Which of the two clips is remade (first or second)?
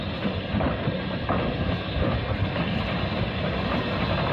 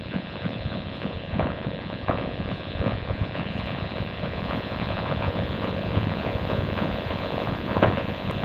second